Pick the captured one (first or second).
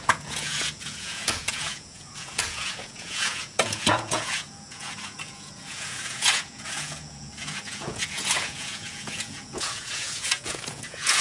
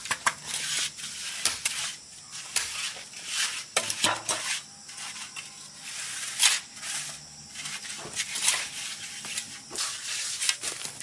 second